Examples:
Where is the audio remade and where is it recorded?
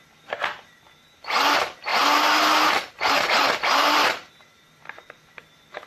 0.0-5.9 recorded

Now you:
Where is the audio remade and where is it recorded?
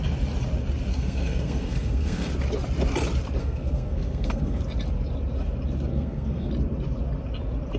0.0-0.9 recorded; 0.9-2.3 remade; 2.3-3.4 recorded; 3.4-4.6 remade; 4.6-5.9 recorded; 5.9-6.5 remade; 6.5-7.8 recorded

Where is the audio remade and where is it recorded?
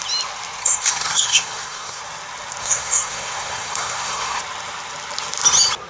0.0-0.6 recorded; 0.6-2.0 remade; 2.0-2.6 recorded; 2.6-4.4 remade; 4.4-5.9 recorded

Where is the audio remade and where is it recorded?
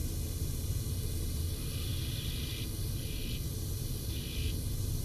0.0-5.0 recorded